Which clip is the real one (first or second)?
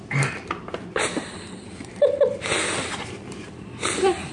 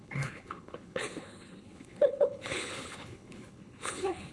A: first